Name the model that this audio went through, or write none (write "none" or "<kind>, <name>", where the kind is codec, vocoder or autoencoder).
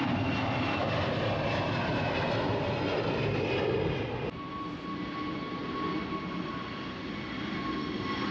none